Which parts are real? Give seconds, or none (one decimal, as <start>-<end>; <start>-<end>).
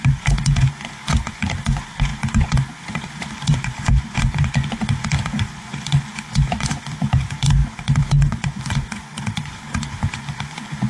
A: none